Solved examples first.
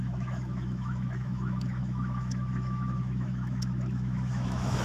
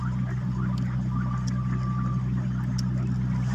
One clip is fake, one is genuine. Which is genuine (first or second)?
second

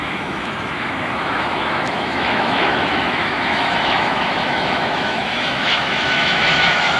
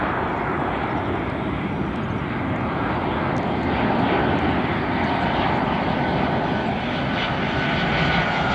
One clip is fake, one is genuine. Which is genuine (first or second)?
second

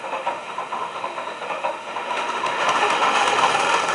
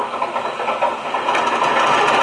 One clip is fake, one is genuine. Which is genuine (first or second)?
second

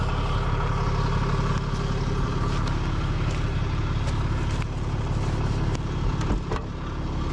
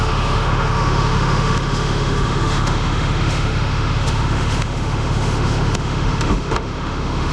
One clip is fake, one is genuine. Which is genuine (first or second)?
first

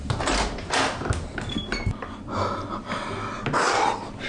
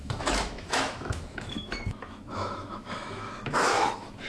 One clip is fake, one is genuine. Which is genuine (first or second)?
first